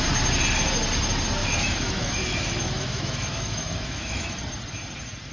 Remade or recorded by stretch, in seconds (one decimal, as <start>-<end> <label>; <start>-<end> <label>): 0.0-1.4 recorded; 1.4-4.4 remade; 4.4-5.3 recorded